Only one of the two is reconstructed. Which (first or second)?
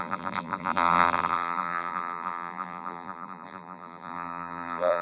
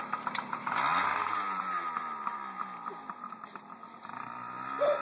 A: first